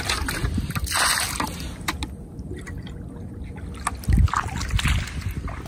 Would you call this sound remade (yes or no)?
no